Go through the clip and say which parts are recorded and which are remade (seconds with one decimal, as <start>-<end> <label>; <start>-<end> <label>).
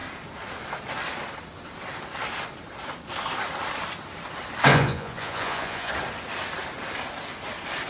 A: 0.0-4.7 recorded; 4.7-5.9 remade; 5.9-7.9 recorded